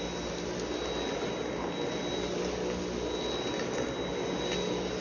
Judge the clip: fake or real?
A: real